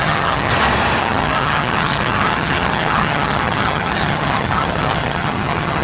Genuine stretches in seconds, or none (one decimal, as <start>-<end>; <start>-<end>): 0.5-1.0